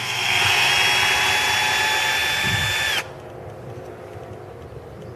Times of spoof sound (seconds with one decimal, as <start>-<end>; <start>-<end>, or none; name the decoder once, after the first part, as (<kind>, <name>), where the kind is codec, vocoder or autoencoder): 0.0-0.7 (codec, SNAC)

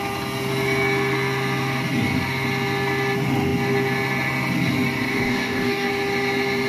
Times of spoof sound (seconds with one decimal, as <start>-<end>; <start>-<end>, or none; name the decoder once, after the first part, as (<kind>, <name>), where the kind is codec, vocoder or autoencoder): 5.1-5.9 (codec, DAC)

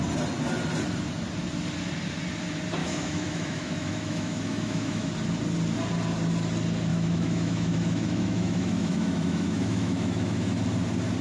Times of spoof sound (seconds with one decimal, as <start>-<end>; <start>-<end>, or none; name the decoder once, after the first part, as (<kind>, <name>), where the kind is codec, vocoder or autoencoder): 2.8-5.1 (autoencoder, DAC-VAE); 6.9-10.6

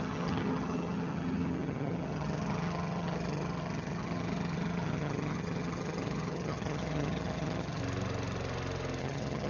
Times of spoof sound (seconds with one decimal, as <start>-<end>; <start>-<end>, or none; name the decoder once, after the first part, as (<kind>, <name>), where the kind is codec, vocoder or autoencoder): 0.0-7.8 (vocoder, HiFi-GAN); 9.0-9.5

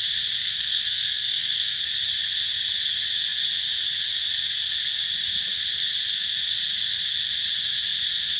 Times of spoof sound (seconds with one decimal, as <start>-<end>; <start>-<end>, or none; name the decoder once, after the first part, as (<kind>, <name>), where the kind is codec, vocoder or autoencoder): 0.4-1.8 (codec, SNAC)

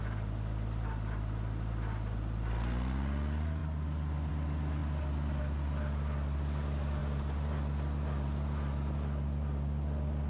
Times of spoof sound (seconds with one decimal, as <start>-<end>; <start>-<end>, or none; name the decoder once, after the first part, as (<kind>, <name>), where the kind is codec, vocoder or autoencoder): none